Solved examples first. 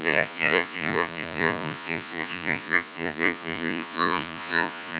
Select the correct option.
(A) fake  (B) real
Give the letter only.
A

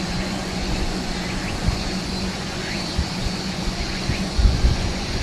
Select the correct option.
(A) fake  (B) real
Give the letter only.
A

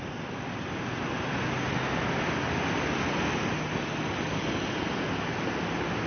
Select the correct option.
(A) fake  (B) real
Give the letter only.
B